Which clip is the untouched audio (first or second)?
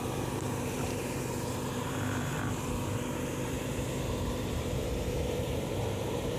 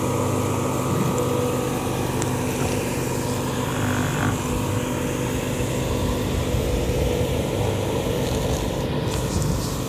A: second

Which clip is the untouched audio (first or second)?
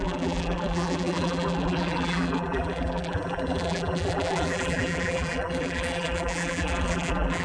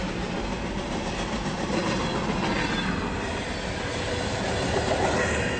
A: second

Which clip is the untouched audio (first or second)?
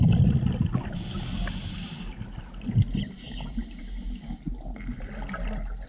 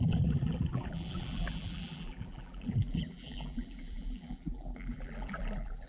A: first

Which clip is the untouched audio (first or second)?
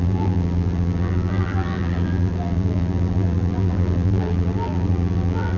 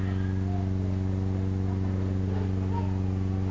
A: second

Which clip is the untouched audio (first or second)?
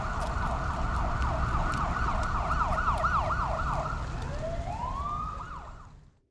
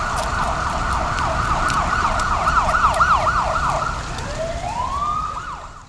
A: first